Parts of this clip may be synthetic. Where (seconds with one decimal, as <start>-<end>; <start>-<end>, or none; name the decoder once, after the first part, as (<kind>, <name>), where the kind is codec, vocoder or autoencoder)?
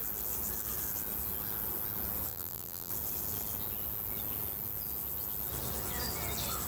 2.3-2.9 (vocoder, BigVGAN v2)